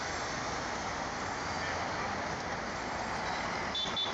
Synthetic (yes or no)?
no